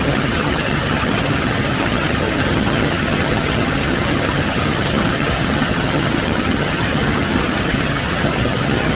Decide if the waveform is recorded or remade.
remade